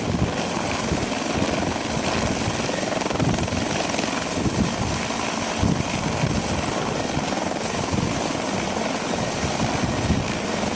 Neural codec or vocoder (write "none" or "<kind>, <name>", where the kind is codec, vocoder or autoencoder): none